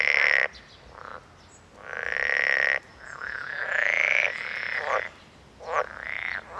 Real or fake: real